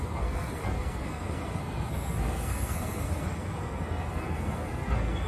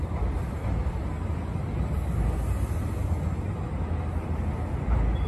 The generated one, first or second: first